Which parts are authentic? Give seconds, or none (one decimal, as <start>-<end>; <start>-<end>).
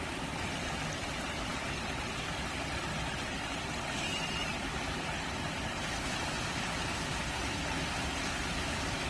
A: 0.0-9.1